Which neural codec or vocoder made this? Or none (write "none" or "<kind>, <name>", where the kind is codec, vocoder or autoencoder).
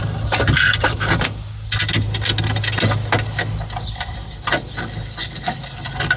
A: none